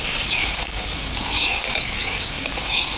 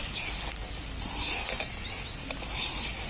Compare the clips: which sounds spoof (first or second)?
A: first